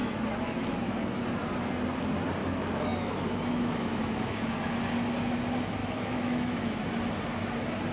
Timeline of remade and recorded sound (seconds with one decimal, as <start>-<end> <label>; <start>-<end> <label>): 0.0-1.2 remade; 1.2-2.4 recorded; 2.4-4.7 remade; 4.7-5.8 recorded; 5.8-6.9 remade; 6.9-7.9 recorded